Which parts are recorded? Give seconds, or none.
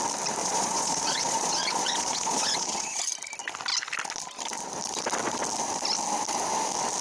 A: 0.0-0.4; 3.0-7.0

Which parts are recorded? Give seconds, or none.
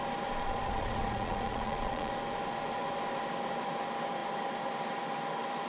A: 0.0-0.4; 2.1-5.7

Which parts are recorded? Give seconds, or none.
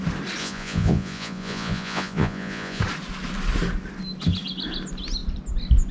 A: 0.0-0.4; 2.8-5.9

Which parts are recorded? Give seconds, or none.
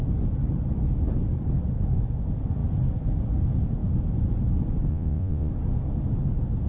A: 0.0-4.9; 5.5-6.7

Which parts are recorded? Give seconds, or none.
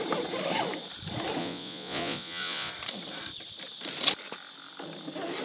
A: 0.0-1.4; 2.7-5.4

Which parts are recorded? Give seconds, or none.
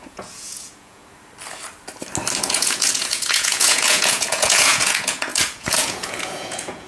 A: 1.0-2.4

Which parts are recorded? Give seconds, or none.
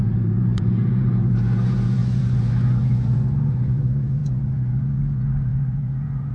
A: none